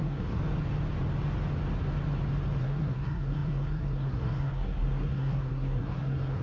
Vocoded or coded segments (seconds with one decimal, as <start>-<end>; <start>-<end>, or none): 0.0-0.4; 2.6-6.4